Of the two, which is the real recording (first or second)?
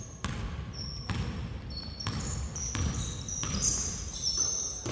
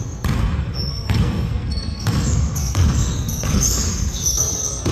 first